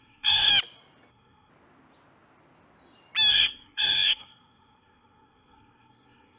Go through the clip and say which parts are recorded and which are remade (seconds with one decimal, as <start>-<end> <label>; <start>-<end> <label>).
0.0-0.5 remade; 0.5-1.1 recorded; 1.1-1.5 remade; 1.5-3.3 recorded; 3.3-6.4 remade